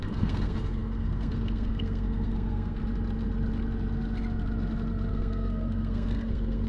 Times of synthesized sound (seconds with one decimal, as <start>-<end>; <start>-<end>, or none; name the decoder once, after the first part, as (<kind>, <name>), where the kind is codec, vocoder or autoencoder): 0.0-2.8 (codec, SNAC); 5.1-6.7